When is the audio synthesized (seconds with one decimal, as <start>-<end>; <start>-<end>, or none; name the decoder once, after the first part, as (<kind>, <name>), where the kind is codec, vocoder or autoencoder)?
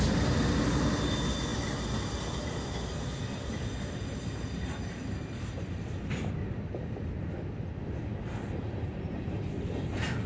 none